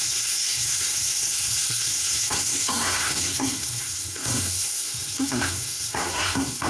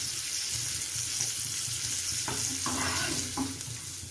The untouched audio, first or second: second